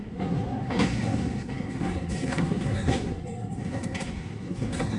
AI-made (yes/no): yes